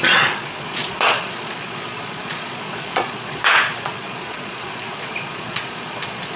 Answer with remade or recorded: remade